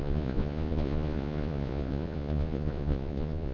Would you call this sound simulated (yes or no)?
yes